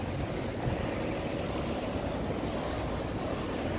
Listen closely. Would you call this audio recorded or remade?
recorded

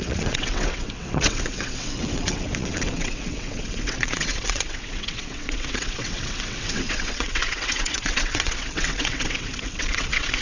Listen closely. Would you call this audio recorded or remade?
remade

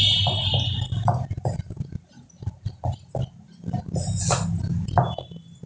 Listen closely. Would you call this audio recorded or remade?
recorded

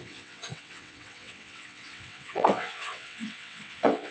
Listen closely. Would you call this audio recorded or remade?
remade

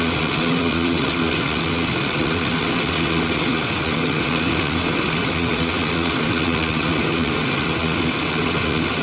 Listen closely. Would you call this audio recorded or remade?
remade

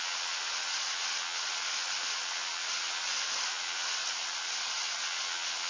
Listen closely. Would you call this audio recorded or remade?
remade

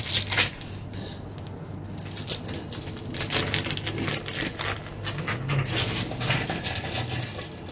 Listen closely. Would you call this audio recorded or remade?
recorded